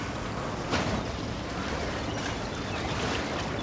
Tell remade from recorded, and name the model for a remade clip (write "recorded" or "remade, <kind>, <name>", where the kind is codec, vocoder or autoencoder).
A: recorded